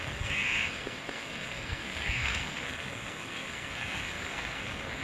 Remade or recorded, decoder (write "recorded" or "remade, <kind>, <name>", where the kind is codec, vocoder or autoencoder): remade, codec, SNAC